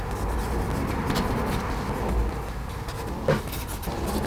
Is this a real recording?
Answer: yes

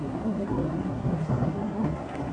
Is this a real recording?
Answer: no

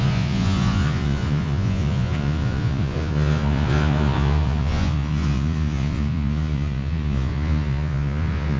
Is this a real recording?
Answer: no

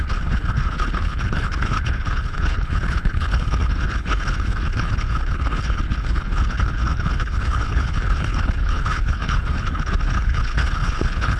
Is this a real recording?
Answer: no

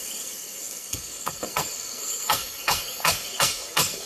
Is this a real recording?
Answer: no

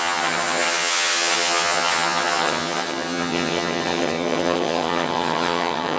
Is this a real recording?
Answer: no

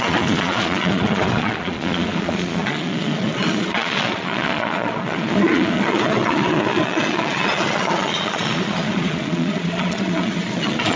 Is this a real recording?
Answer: no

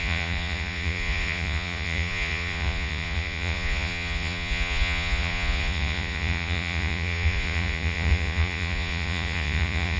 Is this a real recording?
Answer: no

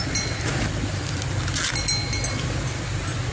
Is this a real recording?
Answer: yes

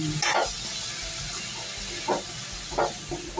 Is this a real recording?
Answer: yes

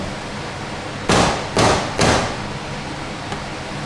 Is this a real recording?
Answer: yes